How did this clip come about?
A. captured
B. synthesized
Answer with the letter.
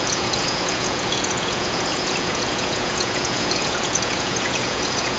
B